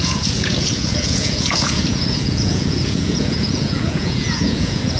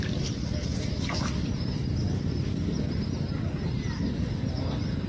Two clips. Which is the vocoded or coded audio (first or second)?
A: first